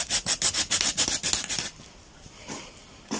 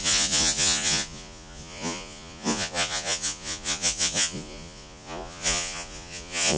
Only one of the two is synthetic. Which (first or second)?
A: second